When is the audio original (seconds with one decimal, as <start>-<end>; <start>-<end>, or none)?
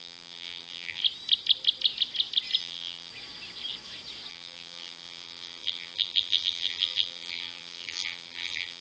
1.0-2.6; 3.1-4.3